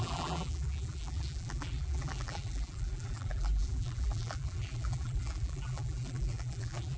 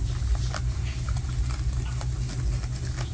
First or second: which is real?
second